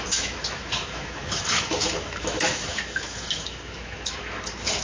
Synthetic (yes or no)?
yes